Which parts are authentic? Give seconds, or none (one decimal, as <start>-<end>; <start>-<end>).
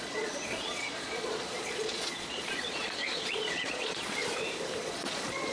4.2-4.8